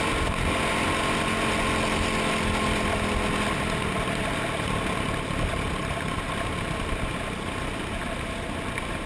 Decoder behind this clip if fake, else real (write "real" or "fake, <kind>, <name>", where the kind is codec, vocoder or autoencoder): real